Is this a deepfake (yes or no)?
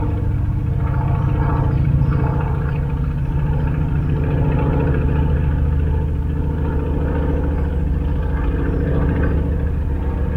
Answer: no